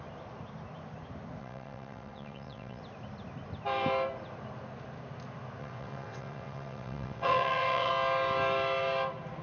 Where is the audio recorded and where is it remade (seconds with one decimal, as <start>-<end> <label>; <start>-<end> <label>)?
0.0-1.4 recorded; 1.4-2.8 remade; 2.8-5.6 recorded; 5.6-7.9 remade; 7.9-9.4 recorded